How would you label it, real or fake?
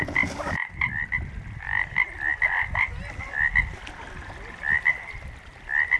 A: real